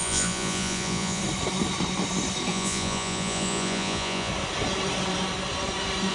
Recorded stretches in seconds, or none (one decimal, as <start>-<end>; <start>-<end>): 1.2-2.5; 4.3-6.1

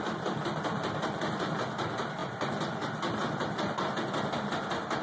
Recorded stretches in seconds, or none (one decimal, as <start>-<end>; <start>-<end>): 0.0-5.0

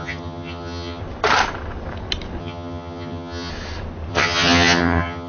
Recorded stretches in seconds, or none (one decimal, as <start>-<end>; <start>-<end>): 1.0-2.4; 3.5-4.1

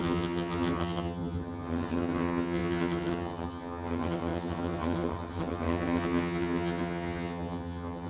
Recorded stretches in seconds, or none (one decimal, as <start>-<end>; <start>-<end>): none

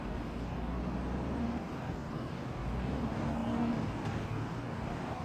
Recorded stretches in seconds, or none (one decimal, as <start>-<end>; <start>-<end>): 0.8-1.4

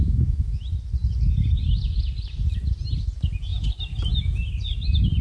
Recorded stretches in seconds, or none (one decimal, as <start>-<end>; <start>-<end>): 0.6-5.2